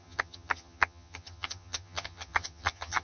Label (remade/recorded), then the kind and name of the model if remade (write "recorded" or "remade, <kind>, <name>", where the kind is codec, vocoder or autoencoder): remade, vocoder, HiFi-GAN